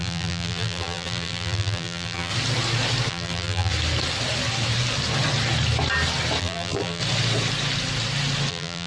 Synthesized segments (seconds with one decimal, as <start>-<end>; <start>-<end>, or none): 0.0-2.3; 3.1-3.7; 6.4-7.0; 8.5-8.9